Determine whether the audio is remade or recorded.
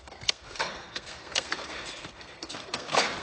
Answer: remade